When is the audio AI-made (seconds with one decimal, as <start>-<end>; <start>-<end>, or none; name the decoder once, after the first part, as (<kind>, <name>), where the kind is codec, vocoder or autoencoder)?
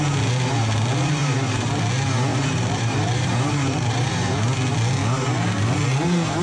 1.2-1.7 (vocoder, BigVGAN v2); 2.3-4.1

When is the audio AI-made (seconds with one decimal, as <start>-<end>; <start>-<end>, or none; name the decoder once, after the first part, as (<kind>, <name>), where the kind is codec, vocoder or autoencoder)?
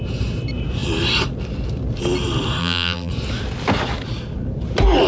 2.6-3.1 (vocoder, BigVGAN v2)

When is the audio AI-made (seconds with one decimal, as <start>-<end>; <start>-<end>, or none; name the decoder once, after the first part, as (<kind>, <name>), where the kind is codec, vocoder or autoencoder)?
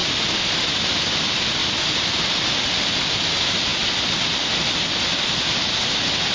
none